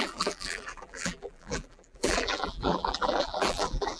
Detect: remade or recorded remade